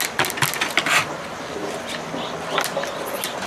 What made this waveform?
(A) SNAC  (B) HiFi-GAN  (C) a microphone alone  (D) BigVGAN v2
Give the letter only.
C